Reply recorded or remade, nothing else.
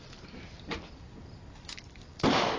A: recorded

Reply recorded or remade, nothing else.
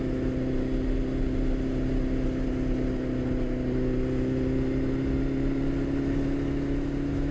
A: recorded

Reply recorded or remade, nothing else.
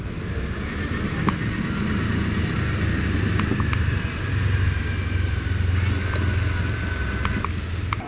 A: recorded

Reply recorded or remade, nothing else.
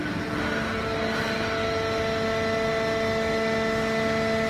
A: recorded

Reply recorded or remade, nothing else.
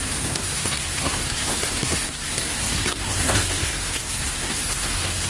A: remade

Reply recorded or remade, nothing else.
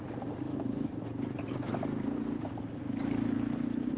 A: recorded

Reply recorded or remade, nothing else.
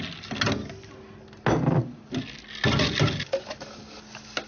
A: recorded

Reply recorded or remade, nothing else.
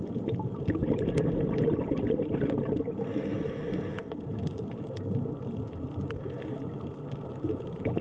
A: recorded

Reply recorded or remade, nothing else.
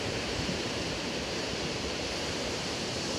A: remade